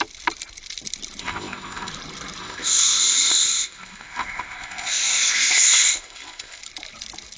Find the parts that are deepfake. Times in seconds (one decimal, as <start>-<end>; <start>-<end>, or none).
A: 1.2-1.9; 2.4-6.6